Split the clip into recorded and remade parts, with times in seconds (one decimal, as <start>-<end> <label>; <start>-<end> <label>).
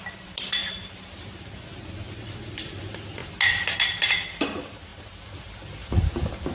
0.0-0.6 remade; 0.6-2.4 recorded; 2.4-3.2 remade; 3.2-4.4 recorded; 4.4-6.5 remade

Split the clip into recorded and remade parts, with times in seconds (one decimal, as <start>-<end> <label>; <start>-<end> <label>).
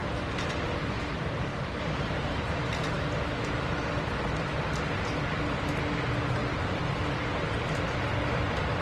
0.0-1.5 recorded; 1.5-3.1 remade; 3.1-6.4 recorded; 6.4-7.8 remade; 7.8-8.8 recorded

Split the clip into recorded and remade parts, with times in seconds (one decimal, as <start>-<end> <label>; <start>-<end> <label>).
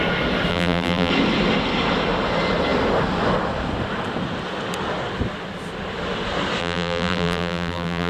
0.0-0.5 recorded; 0.5-1.1 remade; 1.1-6.6 recorded; 6.6-8.1 remade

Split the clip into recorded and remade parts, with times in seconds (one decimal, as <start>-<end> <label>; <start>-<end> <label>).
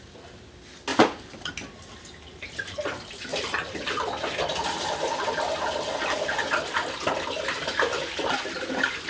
0.0-0.9 recorded; 0.9-1.5 remade; 1.5-3.3 recorded; 3.3-3.9 remade; 3.9-9.1 recorded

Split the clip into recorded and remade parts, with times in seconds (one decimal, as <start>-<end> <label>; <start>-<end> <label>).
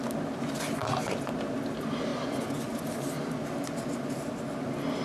0.0-2.1 recorded; 2.1-2.8 remade; 2.8-5.0 recorded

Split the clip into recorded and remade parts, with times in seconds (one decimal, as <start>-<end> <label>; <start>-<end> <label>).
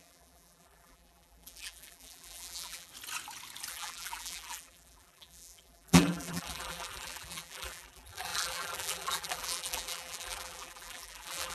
0.0-2.9 remade; 2.9-3.7 recorded; 3.7-11.5 remade